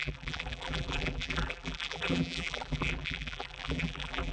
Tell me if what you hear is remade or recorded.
remade